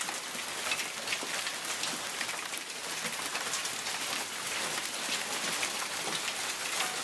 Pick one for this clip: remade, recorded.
recorded